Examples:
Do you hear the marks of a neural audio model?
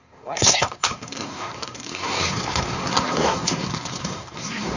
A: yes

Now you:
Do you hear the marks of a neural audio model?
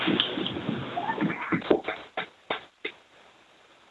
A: no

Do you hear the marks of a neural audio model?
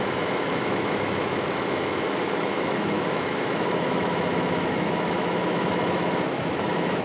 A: yes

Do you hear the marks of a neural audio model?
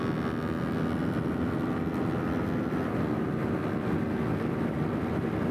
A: no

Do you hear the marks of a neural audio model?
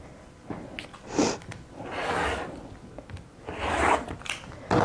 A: no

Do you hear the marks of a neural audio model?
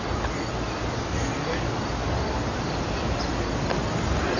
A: no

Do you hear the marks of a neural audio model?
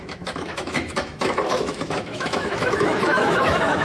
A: yes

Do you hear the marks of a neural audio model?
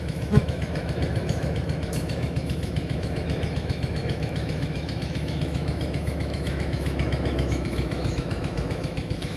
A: yes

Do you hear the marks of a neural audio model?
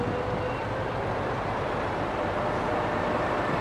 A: no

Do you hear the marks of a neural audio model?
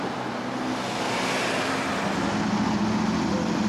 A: no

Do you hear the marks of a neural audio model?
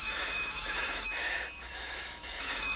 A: yes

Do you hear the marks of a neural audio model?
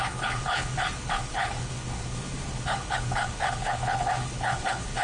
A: yes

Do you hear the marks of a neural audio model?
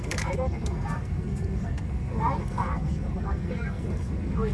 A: yes